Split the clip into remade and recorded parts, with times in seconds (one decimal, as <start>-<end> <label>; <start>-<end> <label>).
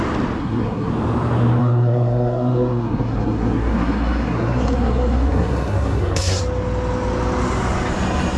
0.0-0.4 recorded; 0.4-0.9 remade; 0.9-1.6 recorded; 1.6-6.4 remade; 6.4-8.4 recorded